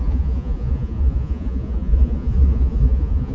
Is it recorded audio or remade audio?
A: remade